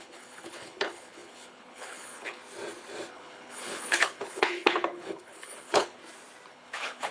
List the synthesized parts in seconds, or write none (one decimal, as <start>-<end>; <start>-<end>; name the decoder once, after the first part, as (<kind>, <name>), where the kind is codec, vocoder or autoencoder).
0.0-2.4 (codec, HILCodec); 3.1-6.0; 6.5-7.1